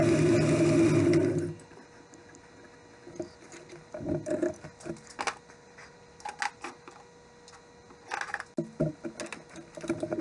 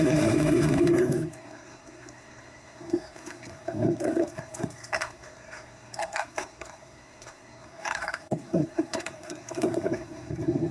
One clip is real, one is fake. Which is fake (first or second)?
second